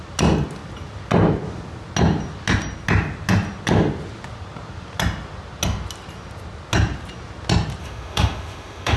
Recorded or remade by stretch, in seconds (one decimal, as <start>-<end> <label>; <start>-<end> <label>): 0.0-7.8 recorded; 7.8-9.0 remade